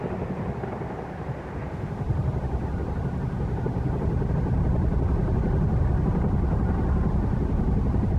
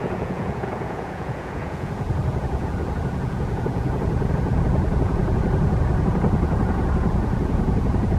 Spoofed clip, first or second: second